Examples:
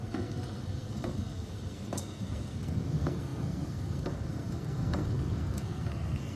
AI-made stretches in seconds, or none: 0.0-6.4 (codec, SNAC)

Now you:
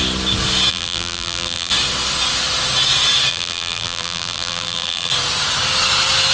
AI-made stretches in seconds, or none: 0.7-1.7 (vocoder, BigVGAN v2); 3.3-5.1

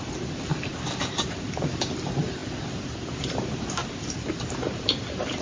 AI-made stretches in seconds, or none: 3.8-4.5 (vocoder, BigVGAN v2)

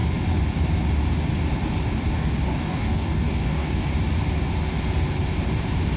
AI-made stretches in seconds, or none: 2.1-3.9 (codec, DAC)

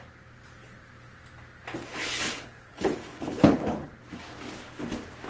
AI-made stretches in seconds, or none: 1.9-3.9 (codec, HILCodec)

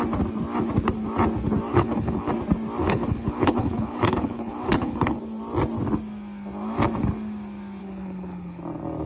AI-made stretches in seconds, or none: 1.7-2.3 (codec, HILCodec); 2.8-5.2; 7.8-8.6